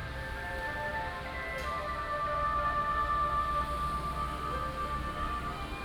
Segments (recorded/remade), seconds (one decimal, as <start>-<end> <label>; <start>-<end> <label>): 0.0-5.8 recorded